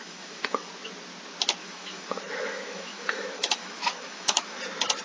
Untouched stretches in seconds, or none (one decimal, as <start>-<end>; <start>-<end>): 0.7-1.6; 4.6-5.0